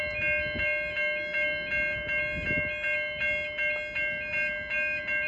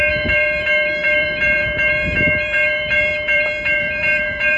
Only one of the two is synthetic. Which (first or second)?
second